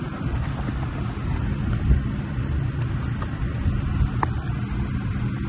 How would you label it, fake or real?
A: real